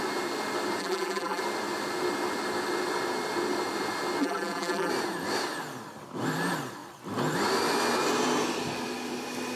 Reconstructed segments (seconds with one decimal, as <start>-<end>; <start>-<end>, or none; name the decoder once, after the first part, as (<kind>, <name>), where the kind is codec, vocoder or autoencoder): 0.8-1.4 (vocoder, BigVGAN v2); 4.2-4.9